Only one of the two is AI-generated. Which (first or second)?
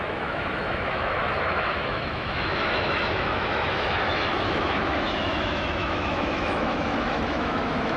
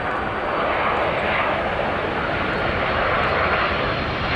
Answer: first